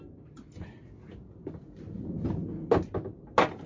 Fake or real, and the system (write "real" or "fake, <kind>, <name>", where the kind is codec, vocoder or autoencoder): real